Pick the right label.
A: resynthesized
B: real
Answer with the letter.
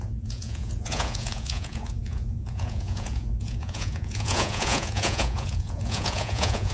A